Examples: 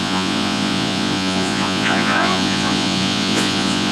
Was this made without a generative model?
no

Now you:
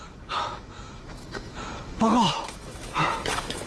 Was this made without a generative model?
no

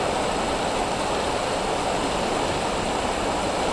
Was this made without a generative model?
yes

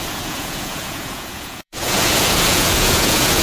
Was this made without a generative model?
no